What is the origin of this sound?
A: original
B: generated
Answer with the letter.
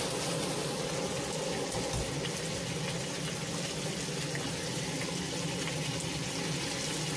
A